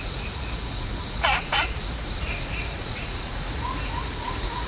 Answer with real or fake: fake